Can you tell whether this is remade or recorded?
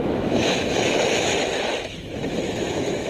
remade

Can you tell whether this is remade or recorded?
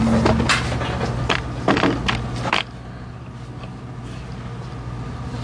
recorded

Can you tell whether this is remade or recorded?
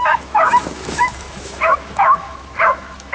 remade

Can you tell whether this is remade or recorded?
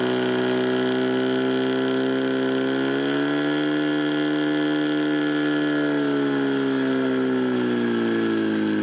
recorded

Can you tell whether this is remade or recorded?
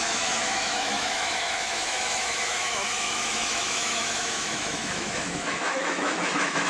remade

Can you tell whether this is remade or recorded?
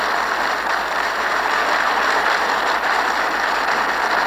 recorded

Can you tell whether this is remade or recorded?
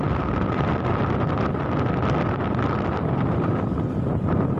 recorded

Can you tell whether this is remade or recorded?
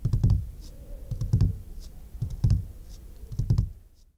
recorded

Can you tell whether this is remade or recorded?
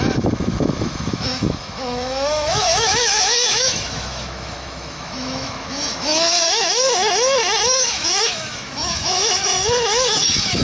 remade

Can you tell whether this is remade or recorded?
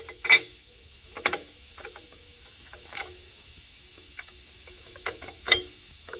remade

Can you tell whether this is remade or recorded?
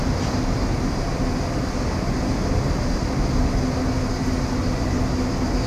recorded